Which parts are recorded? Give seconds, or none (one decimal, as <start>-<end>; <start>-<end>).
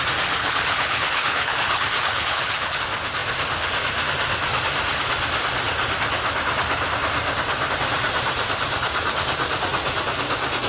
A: 0.0-0.4; 2.8-10.7